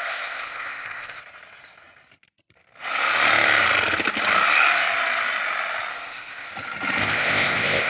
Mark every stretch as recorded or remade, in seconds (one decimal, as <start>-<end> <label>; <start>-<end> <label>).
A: 0.0-1.2 remade; 1.2-5.9 recorded; 5.9-6.5 remade; 6.5-7.0 recorded; 7.0-7.9 remade